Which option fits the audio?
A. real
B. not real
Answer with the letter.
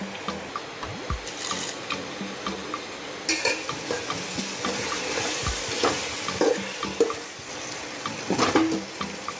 A